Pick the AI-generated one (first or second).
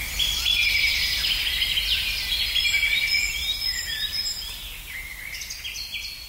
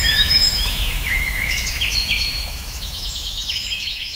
second